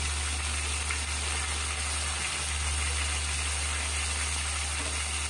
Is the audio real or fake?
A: real